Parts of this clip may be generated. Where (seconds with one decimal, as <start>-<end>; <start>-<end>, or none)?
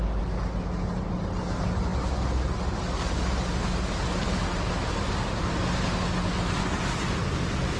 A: none